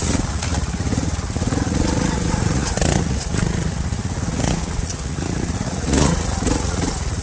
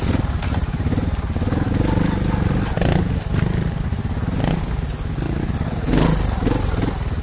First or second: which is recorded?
second